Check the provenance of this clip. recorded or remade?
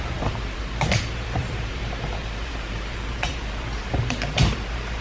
remade